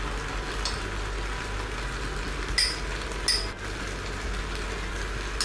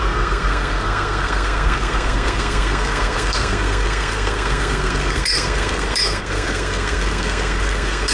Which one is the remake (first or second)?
second